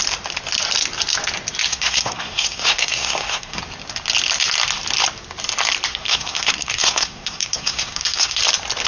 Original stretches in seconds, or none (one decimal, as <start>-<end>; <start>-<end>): 0.0-1.7; 3.6-5.9; 8.4-8.9